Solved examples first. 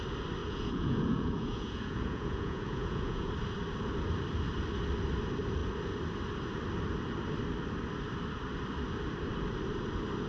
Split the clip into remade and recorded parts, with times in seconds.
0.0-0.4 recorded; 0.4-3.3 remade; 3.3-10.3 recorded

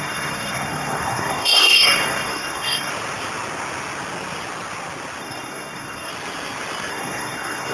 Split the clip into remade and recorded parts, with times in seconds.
0.0-2.9 remade; 2.9-5.2 recorded; 5.2-6.1 remade; 6.1-6.9 recorded; 6.9-7.7 remade

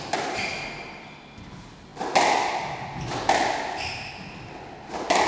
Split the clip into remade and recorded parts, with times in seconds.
0.0-5.3 recorded

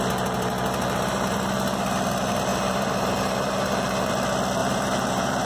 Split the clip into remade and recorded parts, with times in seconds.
0.0-2.5 recorded; 2.5-4.1 remade; 4.1-4.6 recorded; 4.6-5.5 remade